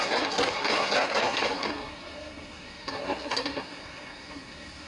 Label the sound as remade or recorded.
remade